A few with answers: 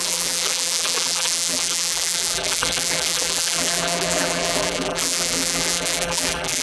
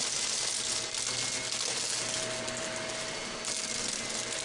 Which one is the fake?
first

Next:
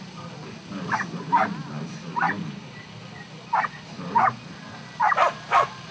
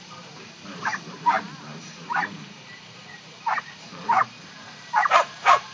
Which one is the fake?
second